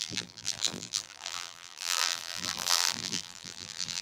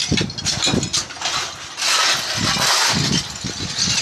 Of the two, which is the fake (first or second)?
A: first